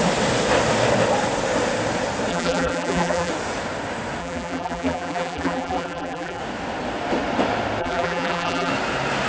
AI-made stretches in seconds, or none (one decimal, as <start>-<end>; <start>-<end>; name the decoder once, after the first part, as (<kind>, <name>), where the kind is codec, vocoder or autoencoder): 2.3-3.3 (vocoder, BigVGAN v2); 4.2-6.4; 7.8-8.7